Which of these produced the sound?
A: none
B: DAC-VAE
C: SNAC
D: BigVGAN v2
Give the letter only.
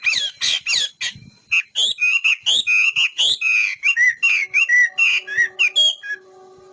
A